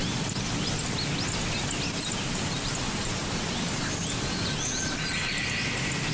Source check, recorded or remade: recorded